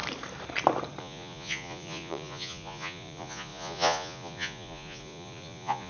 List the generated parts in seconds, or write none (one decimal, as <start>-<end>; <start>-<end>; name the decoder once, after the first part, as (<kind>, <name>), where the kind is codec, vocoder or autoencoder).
1.0-5.9 (vocoder, Vocos)